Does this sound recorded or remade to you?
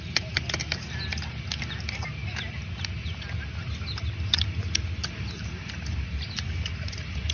recorded